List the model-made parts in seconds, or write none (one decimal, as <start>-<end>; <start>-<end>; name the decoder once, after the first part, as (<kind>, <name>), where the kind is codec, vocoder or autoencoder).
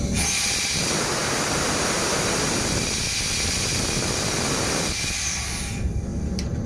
none